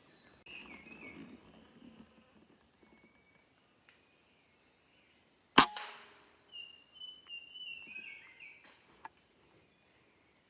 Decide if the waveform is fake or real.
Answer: real